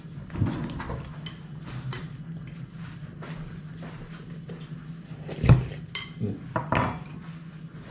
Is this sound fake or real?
real